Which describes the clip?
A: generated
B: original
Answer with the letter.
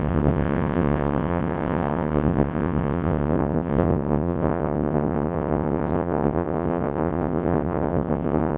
A